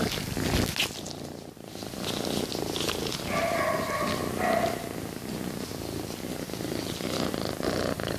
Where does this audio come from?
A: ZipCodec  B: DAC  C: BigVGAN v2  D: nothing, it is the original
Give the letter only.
D